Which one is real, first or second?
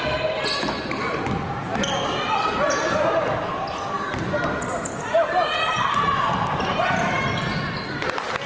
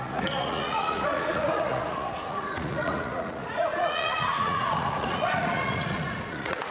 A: first